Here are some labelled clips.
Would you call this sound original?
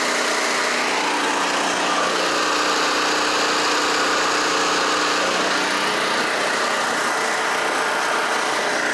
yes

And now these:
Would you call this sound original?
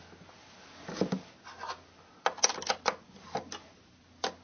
yes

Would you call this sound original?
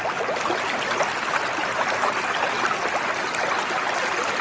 yes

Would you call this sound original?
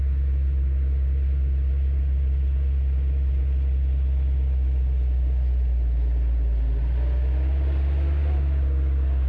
yes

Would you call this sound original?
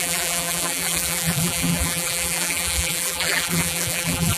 no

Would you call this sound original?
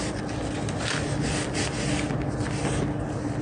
yes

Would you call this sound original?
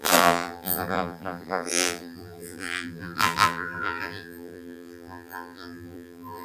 no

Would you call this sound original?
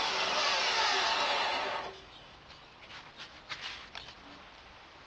no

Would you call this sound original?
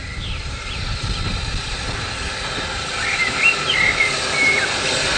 no